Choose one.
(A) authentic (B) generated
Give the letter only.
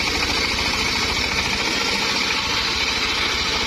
A